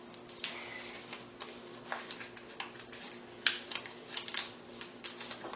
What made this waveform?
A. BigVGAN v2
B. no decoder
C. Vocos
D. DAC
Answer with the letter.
B